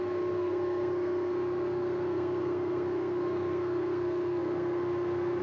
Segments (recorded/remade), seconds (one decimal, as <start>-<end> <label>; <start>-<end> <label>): 0.0-5.4 remade